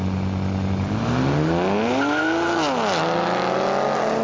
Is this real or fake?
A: real